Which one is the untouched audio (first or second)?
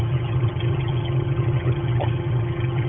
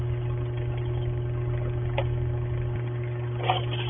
second